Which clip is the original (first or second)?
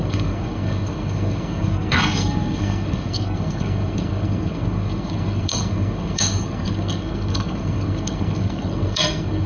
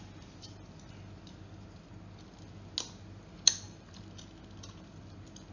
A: second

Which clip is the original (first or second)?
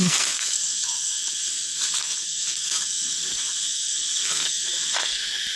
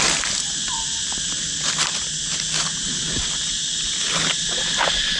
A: second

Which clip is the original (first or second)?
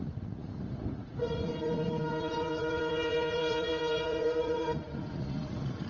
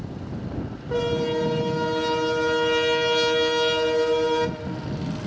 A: second